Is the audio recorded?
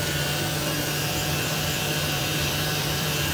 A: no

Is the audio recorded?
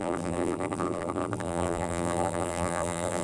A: no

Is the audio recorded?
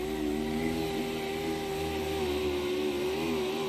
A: yes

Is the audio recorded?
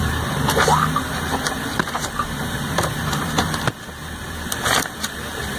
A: no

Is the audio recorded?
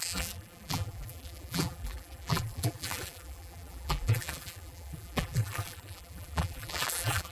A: no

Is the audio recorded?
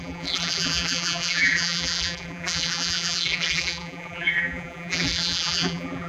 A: no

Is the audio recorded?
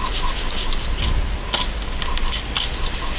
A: yes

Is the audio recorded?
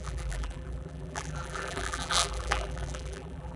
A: no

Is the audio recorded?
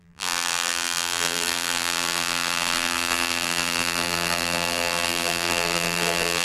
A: no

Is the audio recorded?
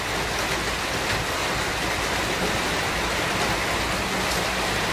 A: yes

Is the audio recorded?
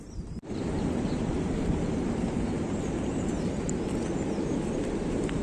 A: no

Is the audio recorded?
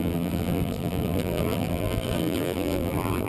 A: no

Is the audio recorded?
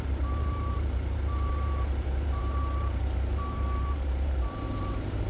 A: no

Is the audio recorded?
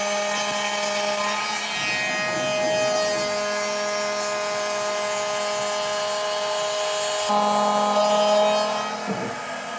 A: yes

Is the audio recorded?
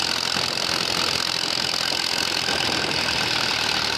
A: yes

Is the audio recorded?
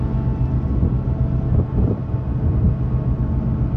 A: yes